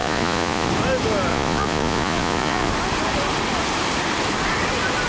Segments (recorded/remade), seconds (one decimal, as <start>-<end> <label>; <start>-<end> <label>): 0.0-0.7 remade; 0.7-1.3 recorded; 1.3-2.7 remade; 2.7-5.1 recorded